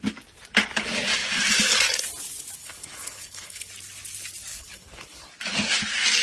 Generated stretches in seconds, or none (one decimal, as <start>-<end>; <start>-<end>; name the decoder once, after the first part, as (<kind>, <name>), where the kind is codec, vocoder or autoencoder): 2.6-3.7 (codec, HILCodec); 4.5-5.3